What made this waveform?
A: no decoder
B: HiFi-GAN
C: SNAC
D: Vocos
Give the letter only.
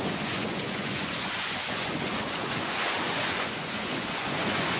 D